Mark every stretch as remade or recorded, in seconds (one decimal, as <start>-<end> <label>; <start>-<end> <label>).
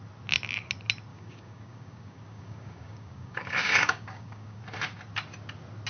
0.0-1.1 recorded; 1.1-4.6 remade; 4.6-5.9 recorded